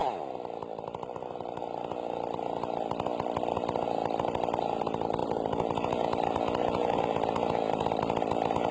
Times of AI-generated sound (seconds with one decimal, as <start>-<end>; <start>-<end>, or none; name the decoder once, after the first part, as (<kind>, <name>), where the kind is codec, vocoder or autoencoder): none